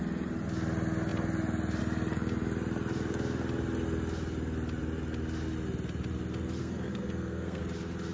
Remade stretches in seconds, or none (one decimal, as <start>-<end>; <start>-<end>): 6.6-7.6